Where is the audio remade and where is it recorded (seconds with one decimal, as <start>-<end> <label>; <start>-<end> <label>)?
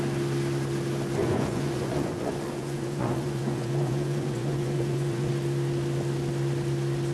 0.0-1.2 recorded; 1.2-5.3 remade; 5.3-7.1 recorded